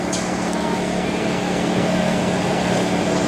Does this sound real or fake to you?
fake